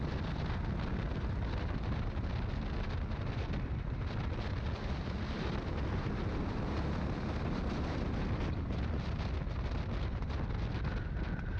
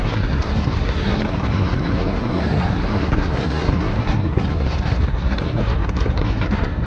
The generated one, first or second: second